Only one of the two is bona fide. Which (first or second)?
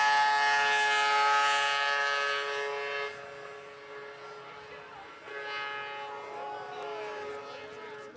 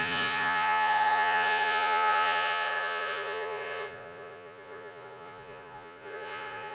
first